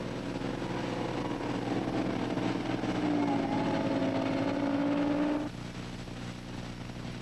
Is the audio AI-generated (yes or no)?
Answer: no